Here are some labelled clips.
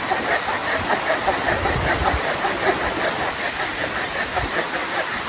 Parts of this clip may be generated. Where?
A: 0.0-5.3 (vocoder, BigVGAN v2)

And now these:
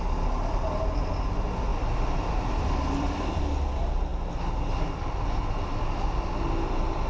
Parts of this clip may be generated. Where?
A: 1.7-3.4 (vocoder, BigVGAN v2)